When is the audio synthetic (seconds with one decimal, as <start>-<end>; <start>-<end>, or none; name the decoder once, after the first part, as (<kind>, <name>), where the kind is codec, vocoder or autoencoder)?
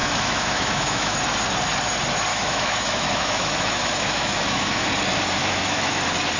0.0-1.2 (autoencoder, DAC-VAE); 2.3-4.9; 5.4-6.0